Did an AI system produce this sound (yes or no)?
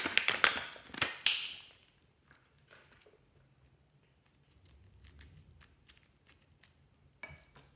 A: no